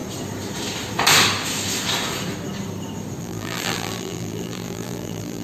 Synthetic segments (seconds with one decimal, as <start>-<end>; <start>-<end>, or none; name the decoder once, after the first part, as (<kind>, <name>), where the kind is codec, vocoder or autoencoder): 3.2-5.4 (vocoder, BigVGAN v2)